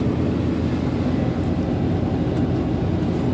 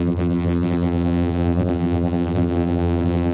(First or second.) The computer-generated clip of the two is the second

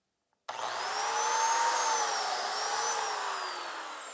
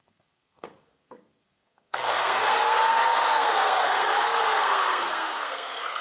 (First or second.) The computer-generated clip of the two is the second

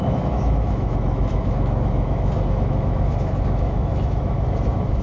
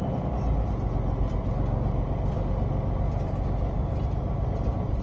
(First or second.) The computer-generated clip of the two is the first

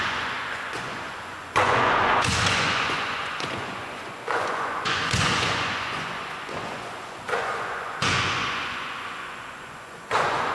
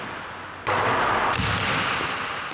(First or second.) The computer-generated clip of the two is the first